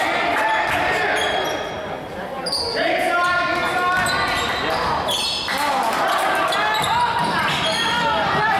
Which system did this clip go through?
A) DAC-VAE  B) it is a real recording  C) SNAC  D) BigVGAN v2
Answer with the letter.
B